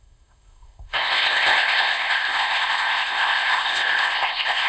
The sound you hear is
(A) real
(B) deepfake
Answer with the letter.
B